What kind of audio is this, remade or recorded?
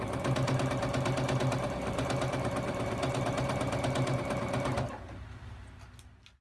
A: recorded